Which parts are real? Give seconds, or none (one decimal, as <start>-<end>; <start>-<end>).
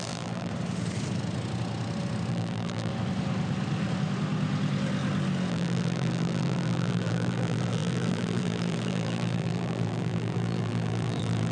0.5-2.3; 2.9-5.5